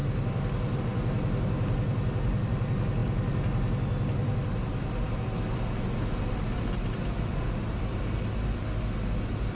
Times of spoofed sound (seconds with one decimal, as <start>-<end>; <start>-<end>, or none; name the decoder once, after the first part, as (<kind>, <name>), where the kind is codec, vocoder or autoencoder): none

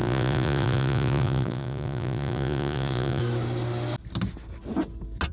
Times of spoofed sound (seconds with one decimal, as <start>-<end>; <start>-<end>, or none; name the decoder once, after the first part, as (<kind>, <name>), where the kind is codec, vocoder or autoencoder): 0.0-3.2 (vocoder, Vocos)